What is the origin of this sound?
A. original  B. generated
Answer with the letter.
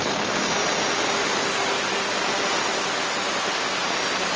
A